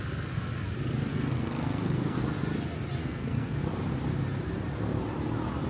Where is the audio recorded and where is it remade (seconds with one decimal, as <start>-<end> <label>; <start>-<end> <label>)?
0.0-1.1 recorded; 1.1-2.2 remade; 2.2-3.0 recorded; 3.0-3.6 remade; 3.6-5.7 recorded